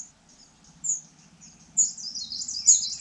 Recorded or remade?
recorded